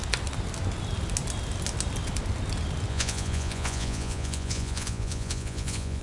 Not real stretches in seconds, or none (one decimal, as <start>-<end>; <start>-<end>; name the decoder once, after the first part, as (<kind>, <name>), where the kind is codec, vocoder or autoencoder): 2.9-6.0 (vocoder, Vocos)